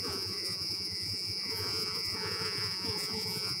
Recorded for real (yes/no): no